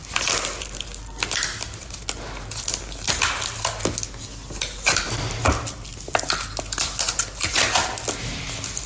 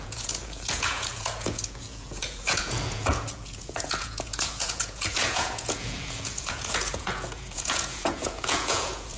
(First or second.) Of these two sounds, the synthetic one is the second